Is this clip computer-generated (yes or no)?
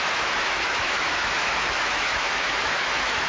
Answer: yes